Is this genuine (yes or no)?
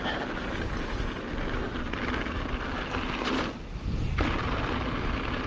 yes